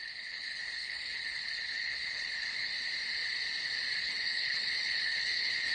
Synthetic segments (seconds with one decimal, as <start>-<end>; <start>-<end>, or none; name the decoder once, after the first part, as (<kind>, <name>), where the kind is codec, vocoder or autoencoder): 0.0-2.7 (codec, HILCodec); 4.0-5.7